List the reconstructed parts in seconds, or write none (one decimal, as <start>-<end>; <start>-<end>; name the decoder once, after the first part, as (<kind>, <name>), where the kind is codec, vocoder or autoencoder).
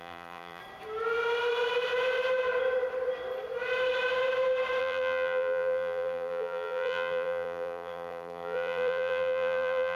0.0-0.6 (vocoder, BigVGAN v2); 4.8-10.0